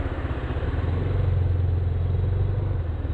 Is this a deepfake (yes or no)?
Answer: no